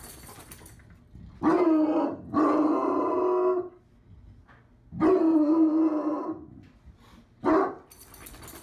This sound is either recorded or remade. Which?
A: recorded